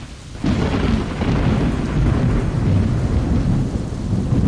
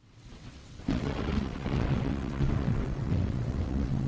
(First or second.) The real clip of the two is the first